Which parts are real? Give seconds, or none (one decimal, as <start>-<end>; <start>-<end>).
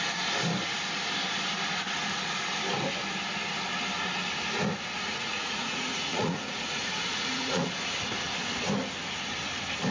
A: 0.0-5.1; 7.6-9.9